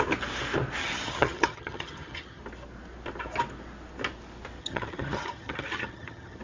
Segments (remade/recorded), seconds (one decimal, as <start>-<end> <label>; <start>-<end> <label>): 0.0-0.8 recorded; 0.8-2.4 remade; 2.4-4.6 recorded; 4.6-6.4 remade